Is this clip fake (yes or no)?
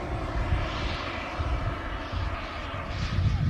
no